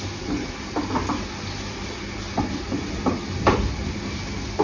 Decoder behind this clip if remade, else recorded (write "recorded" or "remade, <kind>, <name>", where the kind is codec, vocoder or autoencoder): recorded